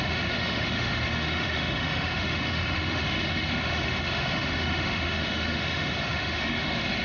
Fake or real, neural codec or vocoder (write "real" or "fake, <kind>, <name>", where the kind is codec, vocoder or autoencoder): fake, autoencoder, DAC-VAE